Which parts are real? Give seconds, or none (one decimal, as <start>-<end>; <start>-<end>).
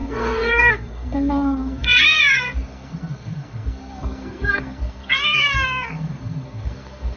none